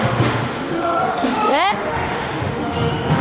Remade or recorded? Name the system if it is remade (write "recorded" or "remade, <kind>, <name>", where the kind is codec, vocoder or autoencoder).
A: remade, autoencoder, DAC-VAE